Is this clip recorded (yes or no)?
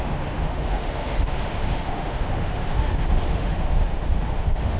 no